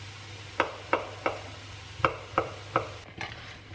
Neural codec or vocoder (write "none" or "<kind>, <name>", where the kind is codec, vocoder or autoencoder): none